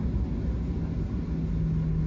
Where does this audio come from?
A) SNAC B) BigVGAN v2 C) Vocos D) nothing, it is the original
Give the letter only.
D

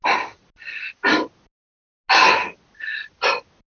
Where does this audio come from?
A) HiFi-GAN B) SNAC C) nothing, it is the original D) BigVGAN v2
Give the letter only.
C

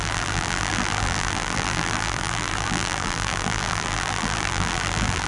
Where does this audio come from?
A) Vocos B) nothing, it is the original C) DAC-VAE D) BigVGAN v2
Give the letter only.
D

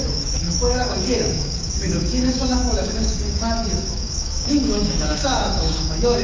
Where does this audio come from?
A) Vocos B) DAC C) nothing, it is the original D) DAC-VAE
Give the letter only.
B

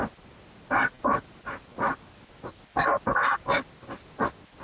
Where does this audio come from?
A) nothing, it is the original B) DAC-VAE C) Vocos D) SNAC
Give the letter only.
A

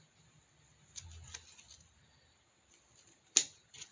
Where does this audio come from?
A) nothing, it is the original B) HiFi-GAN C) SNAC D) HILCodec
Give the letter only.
A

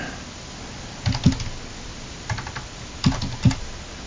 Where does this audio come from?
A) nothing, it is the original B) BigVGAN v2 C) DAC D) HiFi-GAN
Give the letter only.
A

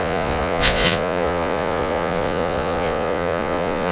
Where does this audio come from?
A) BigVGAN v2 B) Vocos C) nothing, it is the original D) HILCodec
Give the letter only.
B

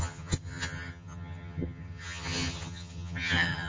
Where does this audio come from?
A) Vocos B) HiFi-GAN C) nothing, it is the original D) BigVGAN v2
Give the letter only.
B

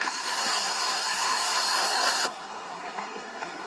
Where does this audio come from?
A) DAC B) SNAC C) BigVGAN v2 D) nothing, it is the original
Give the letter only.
B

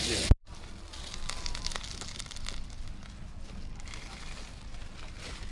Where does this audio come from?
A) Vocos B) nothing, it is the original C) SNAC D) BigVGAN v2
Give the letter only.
B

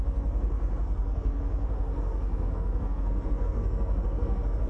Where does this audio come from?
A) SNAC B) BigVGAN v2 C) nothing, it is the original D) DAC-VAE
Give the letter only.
A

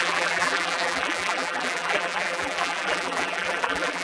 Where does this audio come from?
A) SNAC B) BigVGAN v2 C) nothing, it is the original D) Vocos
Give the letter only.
B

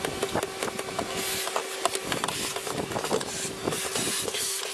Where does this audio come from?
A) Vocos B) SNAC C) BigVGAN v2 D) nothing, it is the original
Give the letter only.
D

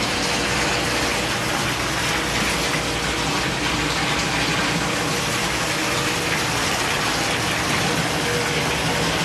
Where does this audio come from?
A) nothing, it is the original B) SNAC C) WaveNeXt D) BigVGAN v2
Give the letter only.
A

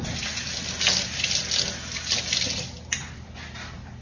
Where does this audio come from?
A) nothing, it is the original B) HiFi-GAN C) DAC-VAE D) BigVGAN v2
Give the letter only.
A